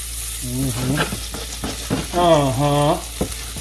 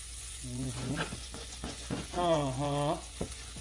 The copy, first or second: second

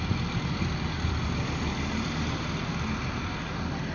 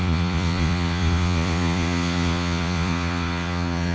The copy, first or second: second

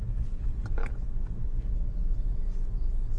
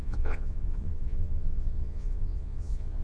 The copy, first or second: second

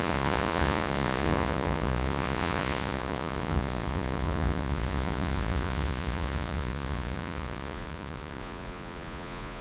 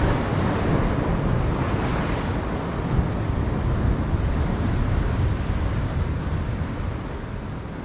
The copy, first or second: first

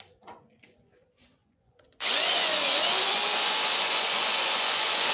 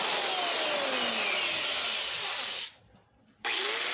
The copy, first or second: first